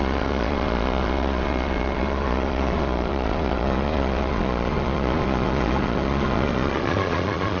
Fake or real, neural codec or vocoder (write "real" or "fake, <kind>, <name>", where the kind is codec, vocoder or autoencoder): fake, vocoder, Vocos